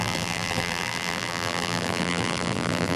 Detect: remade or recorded remade